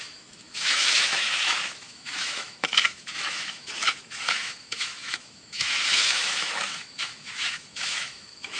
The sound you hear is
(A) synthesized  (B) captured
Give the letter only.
A